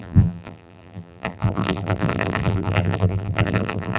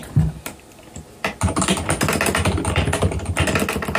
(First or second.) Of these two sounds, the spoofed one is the first